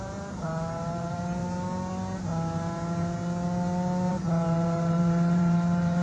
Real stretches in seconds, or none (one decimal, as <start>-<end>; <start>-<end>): 1.4-4.1